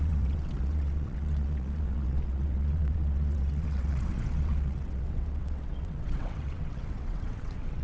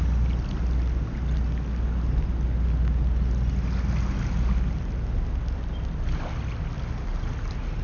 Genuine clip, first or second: second